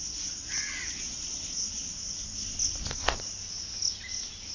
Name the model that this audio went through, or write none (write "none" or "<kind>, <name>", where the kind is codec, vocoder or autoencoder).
none